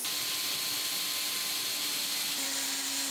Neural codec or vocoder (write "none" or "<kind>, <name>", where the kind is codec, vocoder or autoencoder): none